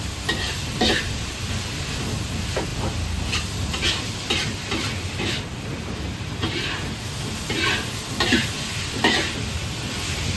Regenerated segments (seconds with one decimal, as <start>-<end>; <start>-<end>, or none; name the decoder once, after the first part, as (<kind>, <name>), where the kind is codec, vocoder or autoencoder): none